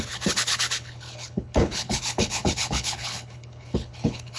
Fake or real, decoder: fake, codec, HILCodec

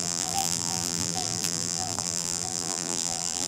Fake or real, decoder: fake, vocoder, BigVGAN v2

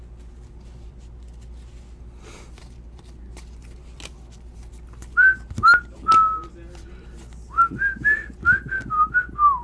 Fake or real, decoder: real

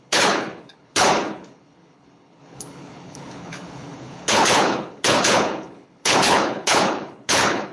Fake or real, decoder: fake, codec, HILCodec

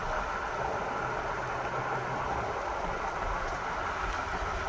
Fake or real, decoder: real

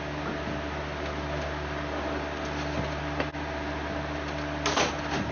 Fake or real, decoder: real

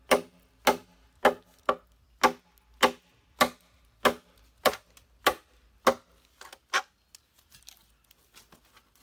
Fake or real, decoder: real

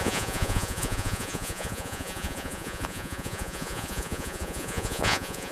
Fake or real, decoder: fake, vocoder, Vocos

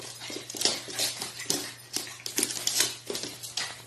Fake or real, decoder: real